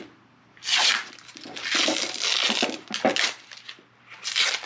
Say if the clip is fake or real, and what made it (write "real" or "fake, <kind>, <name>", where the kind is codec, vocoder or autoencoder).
real